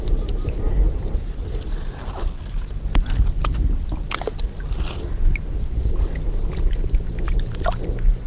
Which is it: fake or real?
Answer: real